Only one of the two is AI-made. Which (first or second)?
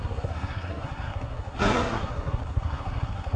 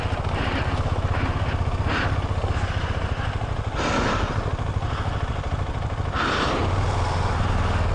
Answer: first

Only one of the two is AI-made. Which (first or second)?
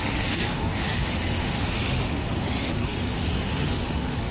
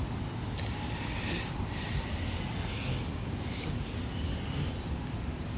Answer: first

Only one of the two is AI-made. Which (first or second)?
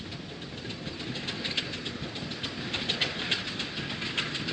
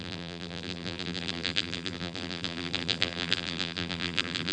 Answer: second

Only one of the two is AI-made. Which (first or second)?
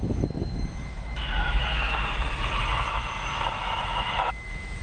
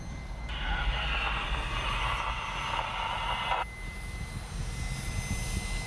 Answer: first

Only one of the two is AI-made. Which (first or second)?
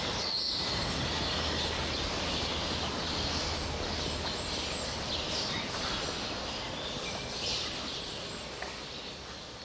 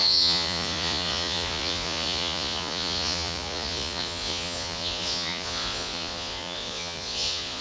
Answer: second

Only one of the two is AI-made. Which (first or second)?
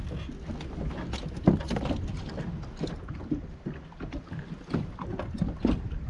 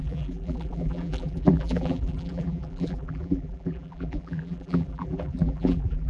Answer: second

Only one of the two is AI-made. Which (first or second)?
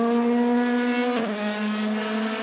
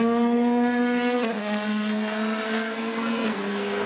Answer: second